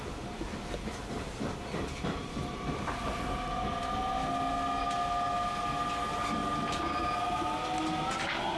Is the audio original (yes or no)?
yes